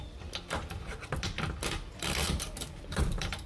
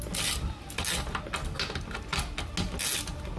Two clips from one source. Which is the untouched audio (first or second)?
second